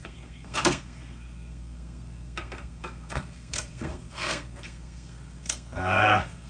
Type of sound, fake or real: fake